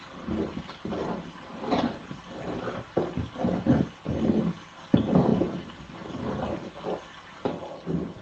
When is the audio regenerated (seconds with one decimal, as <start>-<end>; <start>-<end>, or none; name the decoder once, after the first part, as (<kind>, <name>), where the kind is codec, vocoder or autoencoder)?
none